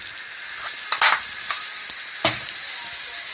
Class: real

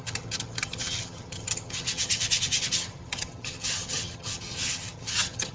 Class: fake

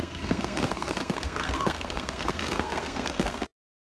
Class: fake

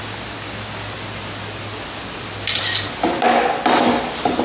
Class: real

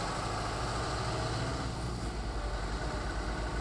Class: real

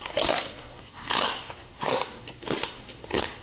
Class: fake